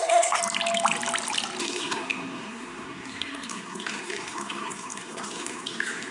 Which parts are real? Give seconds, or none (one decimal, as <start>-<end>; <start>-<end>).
0.4-1.6